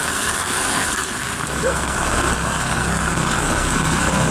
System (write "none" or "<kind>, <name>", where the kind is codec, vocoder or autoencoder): codec, SNAC